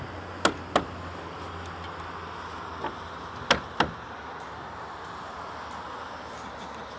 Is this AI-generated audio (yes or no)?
no